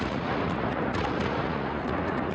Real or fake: fake